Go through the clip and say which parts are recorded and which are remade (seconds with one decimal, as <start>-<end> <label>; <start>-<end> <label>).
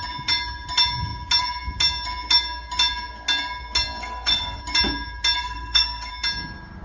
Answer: 0.0-4.0 recorded; 4.0-4.6 remade; 4.6-5.4 recorded; 5.4-6.1 remade; 6.1-6.8 recorded